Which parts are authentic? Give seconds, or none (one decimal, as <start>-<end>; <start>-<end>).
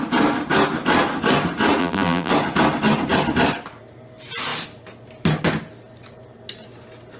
0.0-1.8; 2.3-7.2